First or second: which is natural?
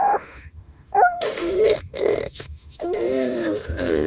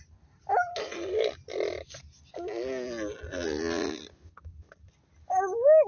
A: second